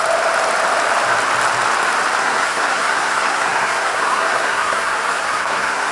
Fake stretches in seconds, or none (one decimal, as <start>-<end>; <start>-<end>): 2.2-5.9